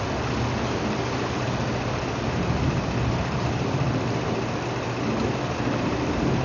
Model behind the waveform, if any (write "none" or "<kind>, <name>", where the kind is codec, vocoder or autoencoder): none